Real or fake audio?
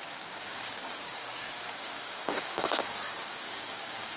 fake